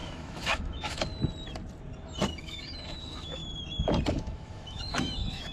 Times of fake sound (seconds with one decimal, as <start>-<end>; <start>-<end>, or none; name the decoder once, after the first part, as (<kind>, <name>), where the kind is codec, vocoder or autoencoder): 0.0-1.1 (autoencoder, DAC-VAE); 2.3-3.4; 4.1-5.5